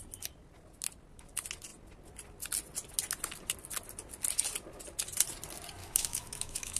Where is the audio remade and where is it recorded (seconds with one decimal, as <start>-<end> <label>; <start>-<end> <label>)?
0.0-5.8 recorded; 5.8-6.8 remade